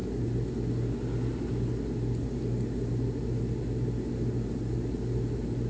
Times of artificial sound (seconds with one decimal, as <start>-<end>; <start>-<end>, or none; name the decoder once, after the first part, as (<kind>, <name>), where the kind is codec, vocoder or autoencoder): none